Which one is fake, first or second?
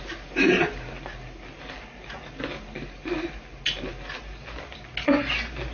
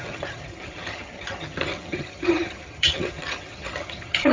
second